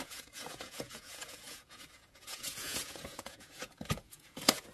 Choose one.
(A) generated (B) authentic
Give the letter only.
A